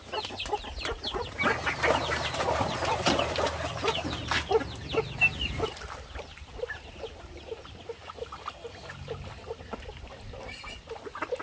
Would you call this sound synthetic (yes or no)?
no